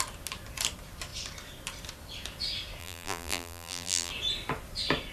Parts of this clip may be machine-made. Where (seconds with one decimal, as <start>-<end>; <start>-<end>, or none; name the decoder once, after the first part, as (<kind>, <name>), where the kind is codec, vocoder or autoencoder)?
2.8-4.1 (vocoder, BigVGAN v2)